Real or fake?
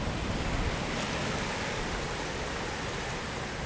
real